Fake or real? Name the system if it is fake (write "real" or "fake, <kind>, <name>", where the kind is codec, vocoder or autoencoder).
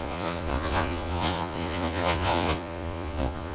fake, vocoder, Vocos